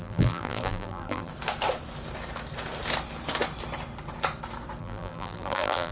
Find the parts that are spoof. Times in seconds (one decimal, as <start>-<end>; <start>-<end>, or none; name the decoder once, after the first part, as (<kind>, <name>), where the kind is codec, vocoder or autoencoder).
0.0-1.3 (vocoder, BigVGAN v2); 4.8-5.9